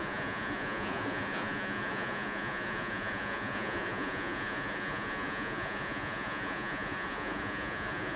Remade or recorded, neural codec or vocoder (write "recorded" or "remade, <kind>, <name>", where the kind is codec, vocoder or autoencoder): remade, vocoder, Vocos